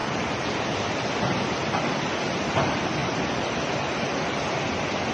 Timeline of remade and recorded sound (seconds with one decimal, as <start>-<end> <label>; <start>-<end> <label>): 0.0-3.0 recorded; 3.0-4.6 remade; 4.6-5.1 recorded